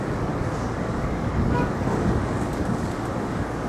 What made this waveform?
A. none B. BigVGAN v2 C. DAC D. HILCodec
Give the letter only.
C